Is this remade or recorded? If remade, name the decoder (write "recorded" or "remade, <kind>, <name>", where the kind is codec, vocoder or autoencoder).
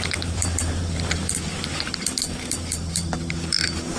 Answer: remade, vocoder, BigVGAN v2